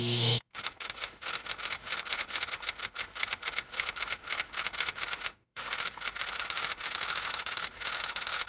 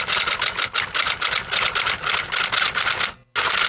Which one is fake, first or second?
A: first